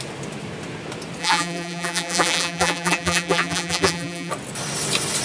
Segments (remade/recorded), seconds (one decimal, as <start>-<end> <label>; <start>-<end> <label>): 0.0-1.2 recorded; 1.2-4.3 remade; 4.3-5.2 recorded